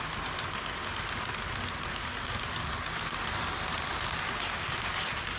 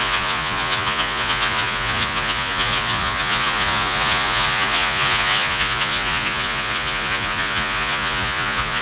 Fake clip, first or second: second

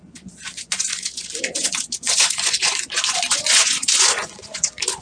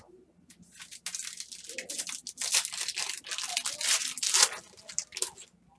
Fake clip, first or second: first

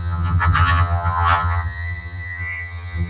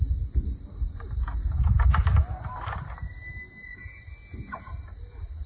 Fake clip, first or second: first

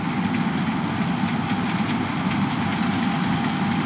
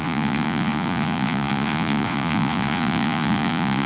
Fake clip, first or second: second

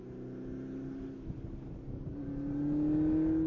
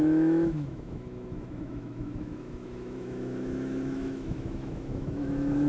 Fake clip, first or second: second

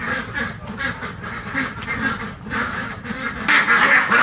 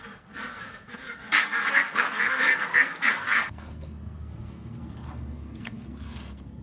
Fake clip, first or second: second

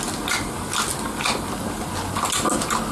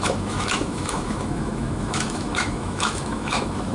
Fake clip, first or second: second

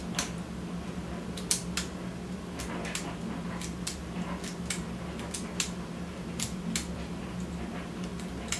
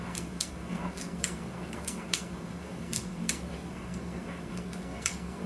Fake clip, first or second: second